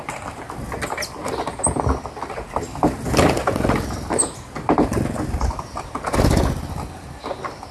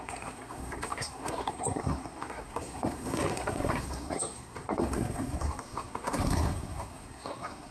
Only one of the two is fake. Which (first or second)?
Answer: second